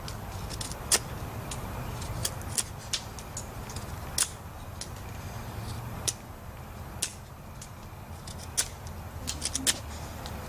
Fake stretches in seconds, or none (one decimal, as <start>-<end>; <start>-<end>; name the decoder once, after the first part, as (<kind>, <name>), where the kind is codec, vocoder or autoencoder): none